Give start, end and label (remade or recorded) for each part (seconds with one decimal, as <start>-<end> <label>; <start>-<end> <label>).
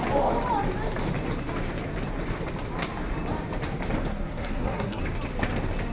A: 0.0-4.1 recorded; 4.1-5.0 remade; 5.0-5.9 recorded